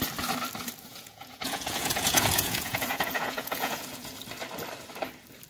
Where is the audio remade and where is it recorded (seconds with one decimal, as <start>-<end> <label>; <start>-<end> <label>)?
0.0-0.9 recorded; 0.9-4.2 remade; 4.2-5.5 recorded